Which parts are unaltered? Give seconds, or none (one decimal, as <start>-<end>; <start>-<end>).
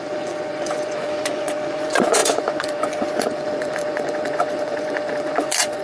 none